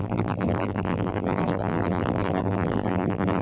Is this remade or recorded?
remade